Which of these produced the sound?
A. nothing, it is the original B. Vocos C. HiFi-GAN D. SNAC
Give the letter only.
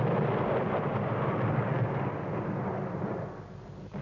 A